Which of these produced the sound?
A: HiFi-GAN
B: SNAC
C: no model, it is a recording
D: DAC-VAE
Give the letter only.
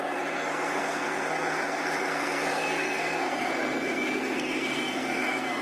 B